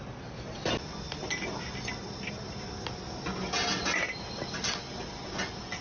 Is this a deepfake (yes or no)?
no